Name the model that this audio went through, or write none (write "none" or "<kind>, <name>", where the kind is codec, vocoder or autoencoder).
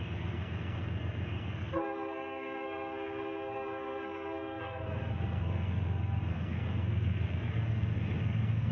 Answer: codec, SNAC